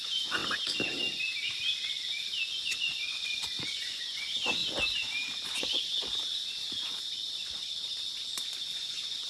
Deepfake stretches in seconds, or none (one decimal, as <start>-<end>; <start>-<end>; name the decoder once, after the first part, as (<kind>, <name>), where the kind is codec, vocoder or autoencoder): 0.0-0.4 (vocoder, Vocos); 2.5-4.6; 5.6-6.0; 8.5-9.3